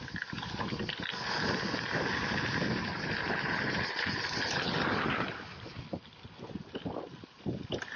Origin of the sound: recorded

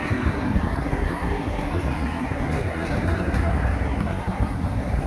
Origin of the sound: remade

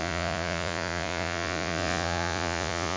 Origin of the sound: remade